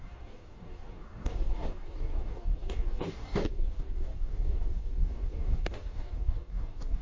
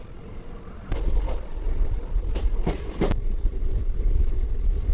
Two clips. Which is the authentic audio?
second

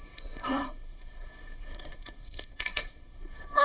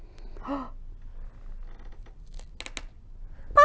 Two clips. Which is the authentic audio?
second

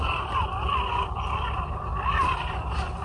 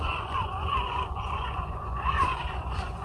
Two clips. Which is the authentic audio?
first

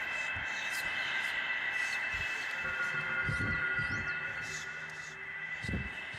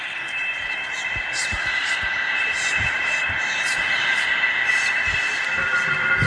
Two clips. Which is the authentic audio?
first